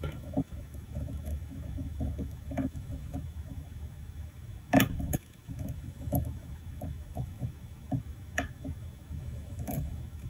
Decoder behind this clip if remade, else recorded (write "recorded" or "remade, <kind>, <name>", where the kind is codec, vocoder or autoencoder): remade, autoencoder, DAC-VAE